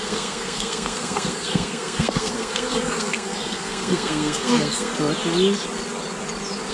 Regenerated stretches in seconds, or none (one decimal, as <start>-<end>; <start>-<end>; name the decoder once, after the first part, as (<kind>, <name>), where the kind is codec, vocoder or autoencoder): 0.0-4.9 (codec, SNAC)